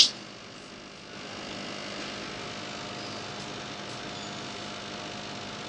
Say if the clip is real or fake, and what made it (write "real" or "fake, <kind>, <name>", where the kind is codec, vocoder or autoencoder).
real